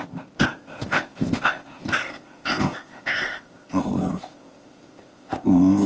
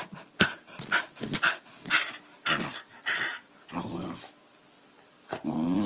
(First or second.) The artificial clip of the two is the first